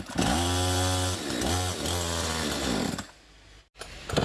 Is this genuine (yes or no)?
yes